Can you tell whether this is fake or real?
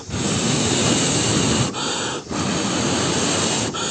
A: real